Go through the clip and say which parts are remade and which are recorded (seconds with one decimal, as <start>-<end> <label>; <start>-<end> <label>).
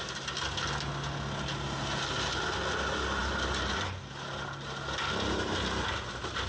0.0-6.5 recorded